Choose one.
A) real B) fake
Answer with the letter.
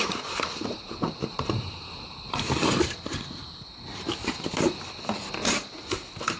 B